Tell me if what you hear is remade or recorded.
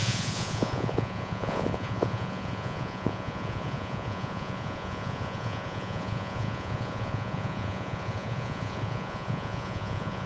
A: remade